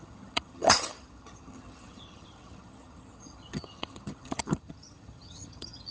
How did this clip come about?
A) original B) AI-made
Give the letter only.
B